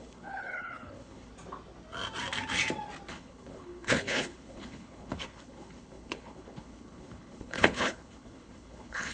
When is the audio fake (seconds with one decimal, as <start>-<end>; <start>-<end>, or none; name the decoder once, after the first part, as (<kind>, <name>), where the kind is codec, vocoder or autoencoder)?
0.0-1.3 (codec, HILCodec); 3.1-9.1